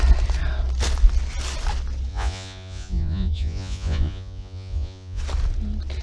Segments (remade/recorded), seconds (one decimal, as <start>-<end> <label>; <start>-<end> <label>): 0.0-2.1 recorded; 2.1-5.2 remade; 5.2-6.0 recorded